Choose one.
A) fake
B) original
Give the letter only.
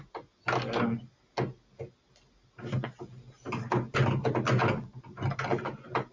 B